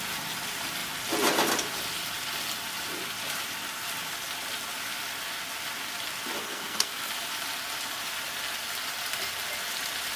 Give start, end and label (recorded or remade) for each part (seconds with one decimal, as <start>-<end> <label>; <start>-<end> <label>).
0.0-6.4 recorded; 6.4-7.1 remade; 7.1-10.2 recorded